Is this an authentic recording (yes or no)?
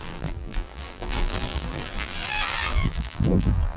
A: no